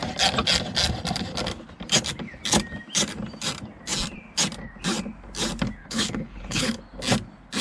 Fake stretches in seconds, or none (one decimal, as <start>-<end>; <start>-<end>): 5.8-6.8